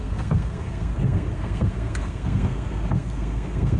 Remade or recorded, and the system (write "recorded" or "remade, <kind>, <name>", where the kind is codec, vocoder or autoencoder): remade, codec, SNAC